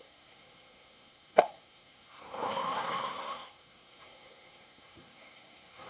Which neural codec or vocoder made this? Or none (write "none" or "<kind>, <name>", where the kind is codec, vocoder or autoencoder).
codec, SNAC